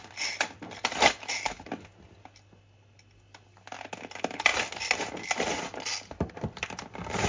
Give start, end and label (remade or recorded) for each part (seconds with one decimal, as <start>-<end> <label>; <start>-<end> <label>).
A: 0.0-7.3 recorded